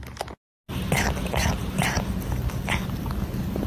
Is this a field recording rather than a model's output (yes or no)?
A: yes